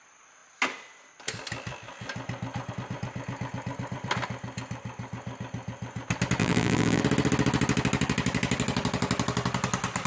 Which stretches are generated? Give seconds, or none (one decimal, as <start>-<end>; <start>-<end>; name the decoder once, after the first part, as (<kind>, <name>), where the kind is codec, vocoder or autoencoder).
6.4-7.0 (vocoder, BigVGAN v2)